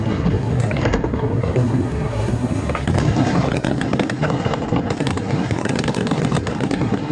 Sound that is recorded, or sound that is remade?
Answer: remade